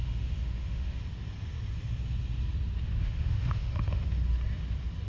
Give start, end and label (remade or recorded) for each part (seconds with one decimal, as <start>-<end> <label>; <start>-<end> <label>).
0.0-1.0 remade; 1.0-3.0 recorded; 3.0-4.2 remade; 4.2-5.1 recorded

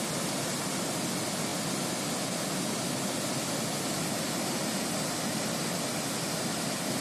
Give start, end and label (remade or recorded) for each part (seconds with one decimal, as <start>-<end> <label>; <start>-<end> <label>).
0.0-7.0 recorded

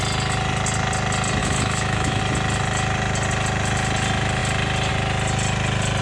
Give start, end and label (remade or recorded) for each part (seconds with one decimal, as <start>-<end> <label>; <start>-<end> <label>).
0.0-1.4 recorded; 1.4-2.2 remade; 2.2-6.0 recorded

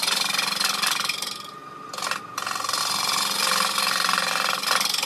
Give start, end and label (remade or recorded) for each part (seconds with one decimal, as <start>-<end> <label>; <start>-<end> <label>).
0.0-5.1 recorded